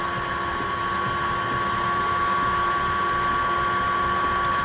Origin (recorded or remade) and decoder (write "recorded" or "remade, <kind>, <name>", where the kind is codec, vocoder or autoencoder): recorded